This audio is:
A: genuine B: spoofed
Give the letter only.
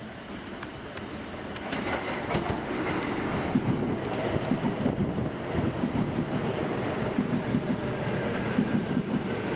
A